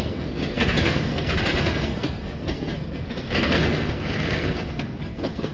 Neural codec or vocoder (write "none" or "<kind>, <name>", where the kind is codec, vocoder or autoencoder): codec, SNAC